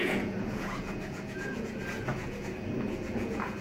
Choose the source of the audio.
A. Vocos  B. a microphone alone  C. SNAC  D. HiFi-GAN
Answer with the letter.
A